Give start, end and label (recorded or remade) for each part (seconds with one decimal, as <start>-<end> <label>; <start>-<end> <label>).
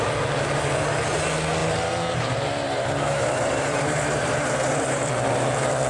0.0-1.6 recorded; 1.6-5.1 remade; 5.1-5.9 recorded